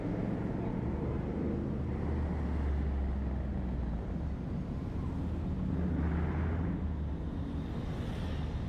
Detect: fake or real real